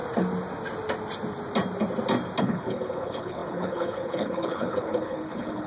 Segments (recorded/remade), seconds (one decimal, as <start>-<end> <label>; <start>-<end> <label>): 0.0-2.4 recorded; 2.4-5.7 remade